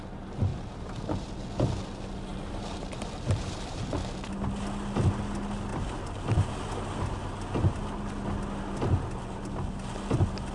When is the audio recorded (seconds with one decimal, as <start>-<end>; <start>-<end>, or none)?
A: 0.0-0.5; 1.3-2.3; 3.8-5.7; 6.5-10.5

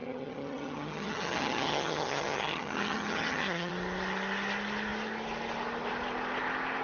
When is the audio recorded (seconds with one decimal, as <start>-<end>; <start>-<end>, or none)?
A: 3.7-6.8

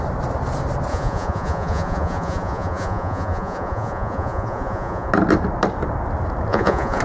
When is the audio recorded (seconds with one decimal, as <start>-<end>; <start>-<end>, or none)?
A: 0.0-0.9; 5.1-6.5

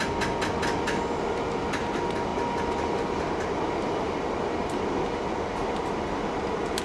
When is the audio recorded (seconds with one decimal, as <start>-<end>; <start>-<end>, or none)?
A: 0.0-6.8

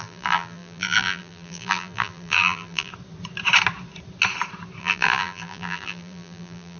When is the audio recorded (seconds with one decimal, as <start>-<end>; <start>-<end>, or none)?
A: 2.9-4.8